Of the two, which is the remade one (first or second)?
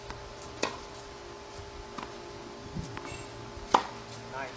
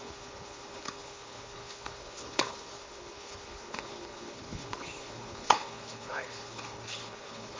second